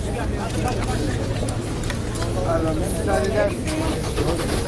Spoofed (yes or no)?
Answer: no